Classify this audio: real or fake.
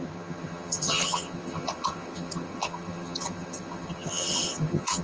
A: fake